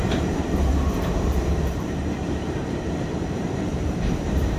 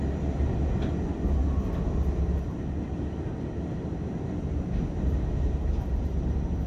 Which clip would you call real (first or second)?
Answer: second